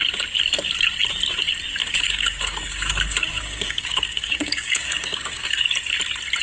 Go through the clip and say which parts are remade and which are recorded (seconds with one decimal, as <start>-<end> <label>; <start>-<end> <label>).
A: 0.0-1.8 recorded; 1.8-5.6 remade; 5.6-6.4 recorded